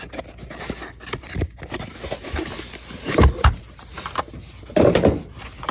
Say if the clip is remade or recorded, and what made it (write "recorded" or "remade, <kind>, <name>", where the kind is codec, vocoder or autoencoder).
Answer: recorded